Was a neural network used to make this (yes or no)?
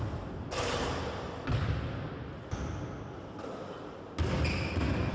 no